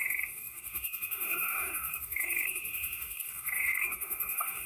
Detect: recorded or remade remade